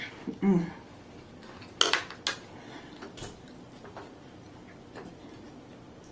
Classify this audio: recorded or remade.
recorded